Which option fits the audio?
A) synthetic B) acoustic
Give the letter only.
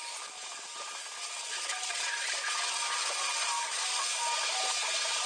B